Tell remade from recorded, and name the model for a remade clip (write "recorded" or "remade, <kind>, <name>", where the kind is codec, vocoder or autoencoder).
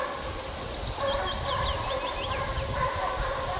recorded